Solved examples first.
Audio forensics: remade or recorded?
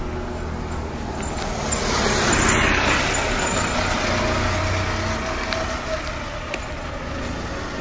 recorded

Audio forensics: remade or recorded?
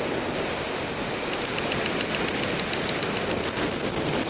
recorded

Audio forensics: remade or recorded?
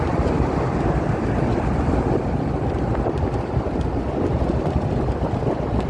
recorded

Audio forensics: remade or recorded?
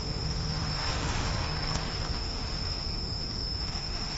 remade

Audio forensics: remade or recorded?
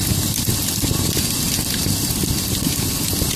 recorded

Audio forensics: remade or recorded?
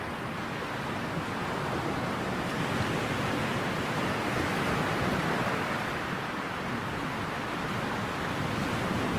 recorded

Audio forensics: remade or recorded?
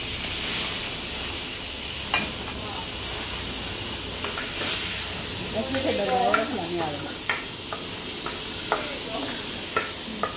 recorded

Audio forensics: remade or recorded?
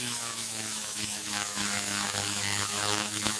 remade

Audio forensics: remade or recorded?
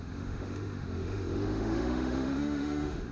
remade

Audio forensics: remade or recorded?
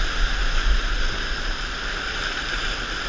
recorded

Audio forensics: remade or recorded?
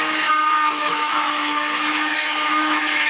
remade